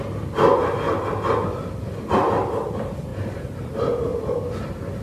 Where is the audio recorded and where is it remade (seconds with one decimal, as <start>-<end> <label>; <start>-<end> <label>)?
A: 0.0-3.1 recorded; 3.1-3.6 remade; 3.6-5.0 recorded